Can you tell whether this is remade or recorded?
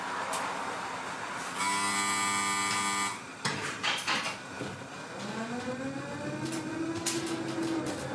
recorded